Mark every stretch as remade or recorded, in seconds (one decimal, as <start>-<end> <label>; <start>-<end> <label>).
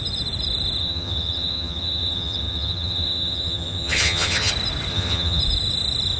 0.0-0.8 recorded; 0.8-4.5 remade; 4.5-4.9 recorded; 4.9-5.4 remade; 5.4-6.2 recorded